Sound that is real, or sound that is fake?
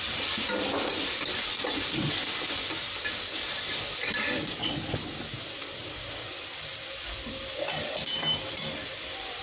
real